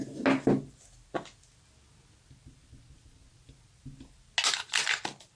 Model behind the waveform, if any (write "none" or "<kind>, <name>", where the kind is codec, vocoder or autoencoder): none